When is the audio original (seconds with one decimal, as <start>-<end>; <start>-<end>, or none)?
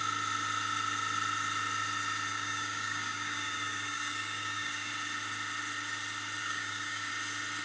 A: 0.0-2.3; 4.9-6.4; 7.1-7.6